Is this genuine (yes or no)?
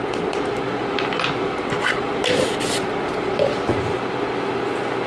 yes